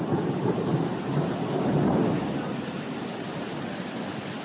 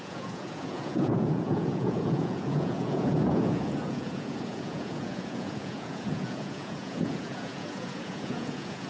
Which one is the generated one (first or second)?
second